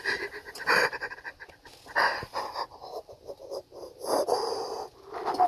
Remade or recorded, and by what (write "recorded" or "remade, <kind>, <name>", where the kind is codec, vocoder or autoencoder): recorded